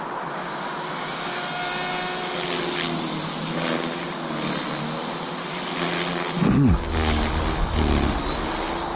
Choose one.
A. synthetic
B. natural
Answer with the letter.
B